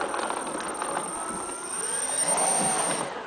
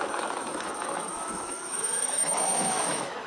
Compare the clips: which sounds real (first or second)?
first